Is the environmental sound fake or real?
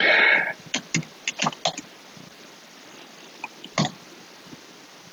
real